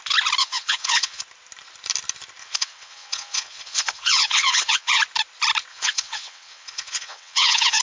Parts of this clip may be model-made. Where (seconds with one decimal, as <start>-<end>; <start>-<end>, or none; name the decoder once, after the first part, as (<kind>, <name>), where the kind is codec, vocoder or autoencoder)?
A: 0.4-1.2 (vocoder, WaveNeXt); 2.4-5.0; 5.7-7.8